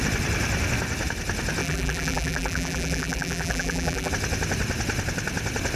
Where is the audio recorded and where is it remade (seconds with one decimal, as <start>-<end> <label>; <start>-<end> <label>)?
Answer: 0.0-1.6 recorded; 1.6-4.1 remade; 4.1-5.8 recorded